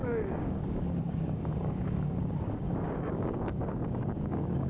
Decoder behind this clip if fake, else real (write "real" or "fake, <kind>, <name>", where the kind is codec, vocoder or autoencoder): fake, codec, DAC